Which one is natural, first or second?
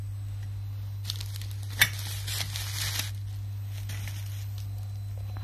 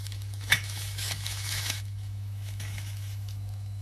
first